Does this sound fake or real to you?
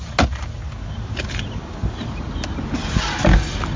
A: real